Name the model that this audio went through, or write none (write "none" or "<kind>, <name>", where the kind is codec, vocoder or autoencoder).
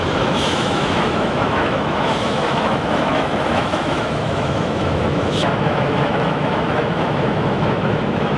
autoencoder, DAC-VAE